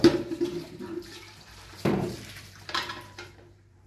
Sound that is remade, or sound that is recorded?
remade